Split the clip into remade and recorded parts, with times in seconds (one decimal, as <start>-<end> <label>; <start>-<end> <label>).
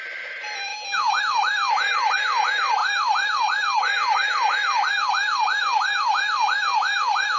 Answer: 0.0-0.7 remade; 0.7-1.2 recorded; 1.2-7.4 remade